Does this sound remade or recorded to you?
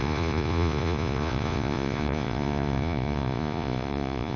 remade